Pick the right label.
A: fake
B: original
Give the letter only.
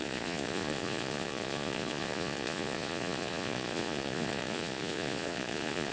A